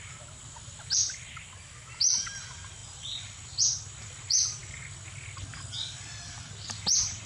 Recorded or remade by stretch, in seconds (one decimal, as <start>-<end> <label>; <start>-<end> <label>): 0.0-7.3 recorded